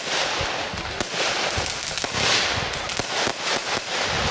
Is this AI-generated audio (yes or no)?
no